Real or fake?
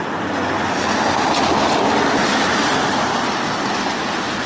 real